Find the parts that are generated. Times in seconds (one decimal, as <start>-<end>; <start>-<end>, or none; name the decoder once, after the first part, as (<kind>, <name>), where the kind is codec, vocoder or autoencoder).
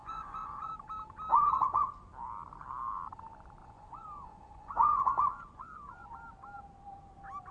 0.0-0.7 (vocoder, Vocos); 1.3-1.9; 3.6-6.1